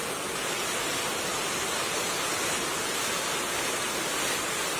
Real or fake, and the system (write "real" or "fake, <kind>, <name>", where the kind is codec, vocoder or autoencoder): real